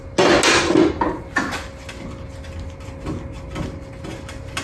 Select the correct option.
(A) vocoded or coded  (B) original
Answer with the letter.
B